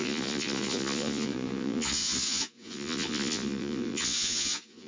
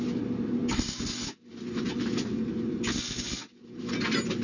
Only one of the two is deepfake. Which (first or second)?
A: first